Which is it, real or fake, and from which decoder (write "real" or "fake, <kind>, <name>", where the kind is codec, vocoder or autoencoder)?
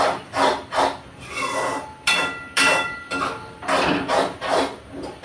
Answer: real